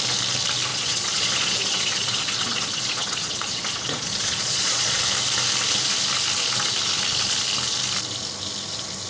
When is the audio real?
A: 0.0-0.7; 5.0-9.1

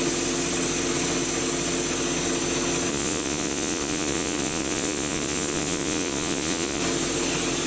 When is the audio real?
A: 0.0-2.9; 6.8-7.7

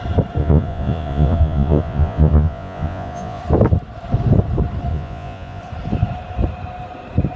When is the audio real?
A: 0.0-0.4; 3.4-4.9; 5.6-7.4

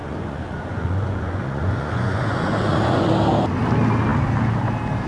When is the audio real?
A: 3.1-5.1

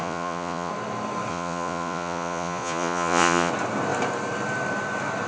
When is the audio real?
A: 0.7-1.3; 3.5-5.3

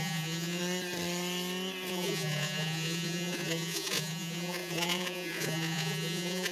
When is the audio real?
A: 0.6-1.9

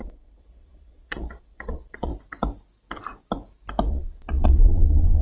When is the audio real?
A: 2.1-3.9